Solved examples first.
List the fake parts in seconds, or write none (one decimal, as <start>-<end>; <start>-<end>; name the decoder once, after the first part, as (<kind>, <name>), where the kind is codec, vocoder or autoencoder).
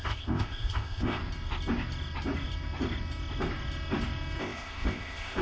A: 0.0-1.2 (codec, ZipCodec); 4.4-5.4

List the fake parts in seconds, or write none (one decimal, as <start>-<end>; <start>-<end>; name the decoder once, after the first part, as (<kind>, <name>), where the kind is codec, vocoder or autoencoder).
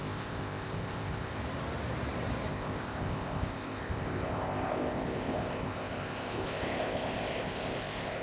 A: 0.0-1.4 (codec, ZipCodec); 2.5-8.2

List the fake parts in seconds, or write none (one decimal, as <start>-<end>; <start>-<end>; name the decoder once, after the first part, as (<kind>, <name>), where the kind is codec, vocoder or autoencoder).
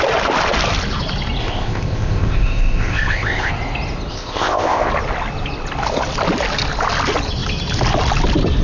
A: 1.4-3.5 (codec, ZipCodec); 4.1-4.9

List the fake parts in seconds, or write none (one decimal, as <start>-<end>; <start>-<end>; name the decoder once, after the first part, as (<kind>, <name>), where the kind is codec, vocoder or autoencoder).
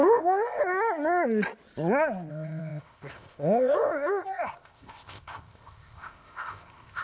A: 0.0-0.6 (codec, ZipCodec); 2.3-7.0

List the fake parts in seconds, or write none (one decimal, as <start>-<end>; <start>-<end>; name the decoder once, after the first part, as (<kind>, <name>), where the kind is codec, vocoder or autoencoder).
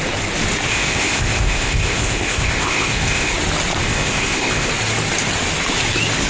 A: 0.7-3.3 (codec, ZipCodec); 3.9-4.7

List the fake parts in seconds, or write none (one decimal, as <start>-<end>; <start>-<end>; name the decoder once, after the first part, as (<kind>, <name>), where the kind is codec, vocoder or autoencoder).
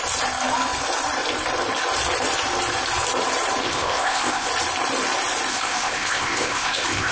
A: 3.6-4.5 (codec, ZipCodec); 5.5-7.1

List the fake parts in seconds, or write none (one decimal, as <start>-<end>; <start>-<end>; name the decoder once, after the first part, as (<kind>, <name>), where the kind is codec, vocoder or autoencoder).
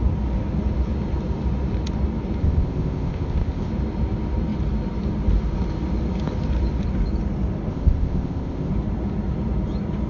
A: 2.4-3.7 (codec, ZipCodec); 7.7-8.7